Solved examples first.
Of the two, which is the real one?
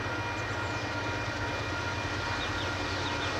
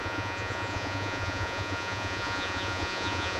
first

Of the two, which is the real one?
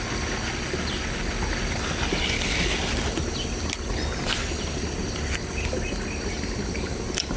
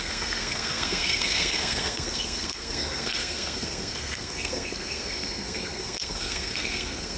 first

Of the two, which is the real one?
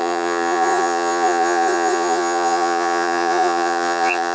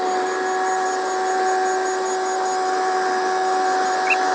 second